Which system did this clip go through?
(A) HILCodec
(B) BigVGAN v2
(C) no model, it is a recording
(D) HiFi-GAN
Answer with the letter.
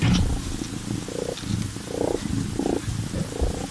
C